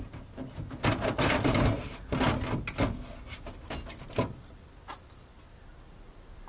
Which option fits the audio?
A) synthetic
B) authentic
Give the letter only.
B